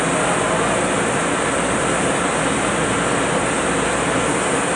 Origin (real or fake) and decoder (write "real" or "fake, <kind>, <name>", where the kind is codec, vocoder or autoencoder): real